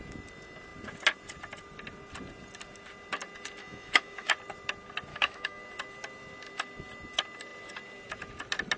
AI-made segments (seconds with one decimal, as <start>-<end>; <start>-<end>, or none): 3.6-4.3; 5.1-5.6